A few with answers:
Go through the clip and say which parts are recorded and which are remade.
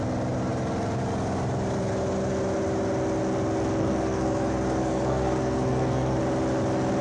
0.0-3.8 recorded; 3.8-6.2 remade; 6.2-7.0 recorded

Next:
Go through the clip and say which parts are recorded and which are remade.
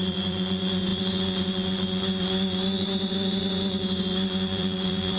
0.0-5.2 remade